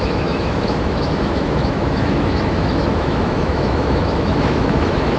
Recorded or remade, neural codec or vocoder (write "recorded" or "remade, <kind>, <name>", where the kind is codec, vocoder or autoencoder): remade, autoencoder, DAC-VAE